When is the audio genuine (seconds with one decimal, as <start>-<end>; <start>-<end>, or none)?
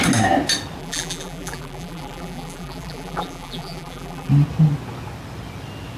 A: 0.0-0.8; 4.3-6.0